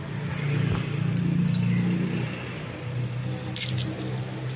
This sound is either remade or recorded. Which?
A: recorded